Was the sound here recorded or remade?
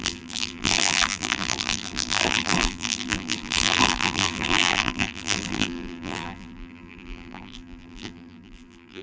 remade